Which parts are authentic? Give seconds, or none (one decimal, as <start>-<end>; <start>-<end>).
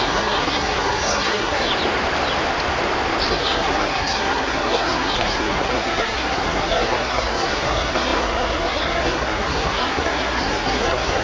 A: 1.7-3.3